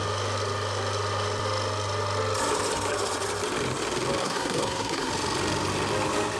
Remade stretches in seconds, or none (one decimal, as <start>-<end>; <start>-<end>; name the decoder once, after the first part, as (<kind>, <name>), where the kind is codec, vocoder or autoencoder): 4.2-5.1 (codec, SNAC)